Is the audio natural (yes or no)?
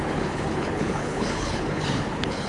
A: no